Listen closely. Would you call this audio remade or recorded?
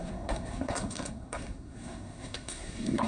remade